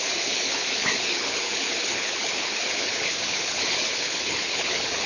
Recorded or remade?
remade